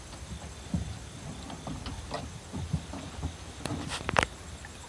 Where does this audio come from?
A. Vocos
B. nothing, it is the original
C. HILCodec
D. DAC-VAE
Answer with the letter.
B